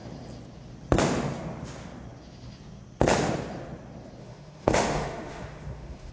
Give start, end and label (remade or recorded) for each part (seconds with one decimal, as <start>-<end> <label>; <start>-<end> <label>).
0.0-4.2 recorded; 4.2-6.1 remade